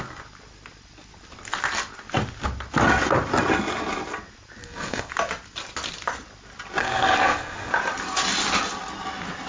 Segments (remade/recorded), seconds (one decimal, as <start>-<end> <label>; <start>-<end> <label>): 0.0-4.6 recorded; 4.6-5.1 remade; 5.1-6.8 recorded; 6.8-7.7 remade; 7.7-9.5 recorded

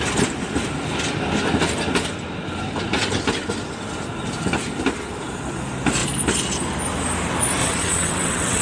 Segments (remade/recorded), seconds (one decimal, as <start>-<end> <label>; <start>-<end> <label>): 0.0-7.6 recorded; 7.6-8.6 remade

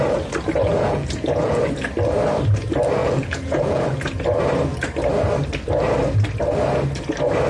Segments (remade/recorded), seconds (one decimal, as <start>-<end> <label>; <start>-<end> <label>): 0.0-0.7 recorded; 0.7-1.6 remade; 1.6-3.0 recorded; 3.0-3.8 remade; 3.8-7.5 recorded

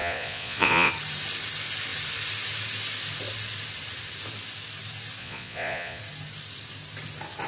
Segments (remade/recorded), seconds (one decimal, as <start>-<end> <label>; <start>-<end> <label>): 0.0-0.9 remade; 0.9-5.2 recorded; 5.2-6.0 remade; 6.0-7.5 recorded

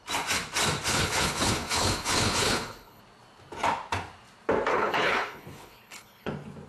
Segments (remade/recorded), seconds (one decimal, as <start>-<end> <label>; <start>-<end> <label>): 0.0-0.9 recorded; 0.9-3.0 remade; 3.0-4.7 recorded; 4.7-6.3 remade; 6.3-6.7 recorded

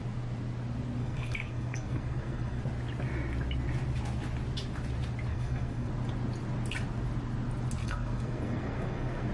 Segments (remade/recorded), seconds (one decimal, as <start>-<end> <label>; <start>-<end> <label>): 0.0-1.0 recorded; 1.0-2.6 remade; 2.6-5.3 recorded; 5.3-5.9 remade; 5.9-7.8 recorded; 7.8-9.3 remade

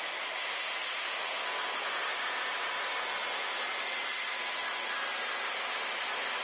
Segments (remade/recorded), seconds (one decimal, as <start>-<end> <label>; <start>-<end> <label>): 0.0-0.8 recorded; 0.8-1.3 remade; 1.3-6.4 recorded